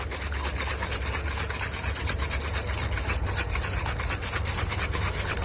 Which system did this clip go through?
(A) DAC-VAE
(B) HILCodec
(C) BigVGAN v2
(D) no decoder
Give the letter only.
D